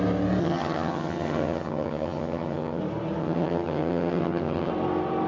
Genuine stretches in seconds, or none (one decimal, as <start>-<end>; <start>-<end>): 0.0-0.4; 2.8-3.2; 4.7-5.3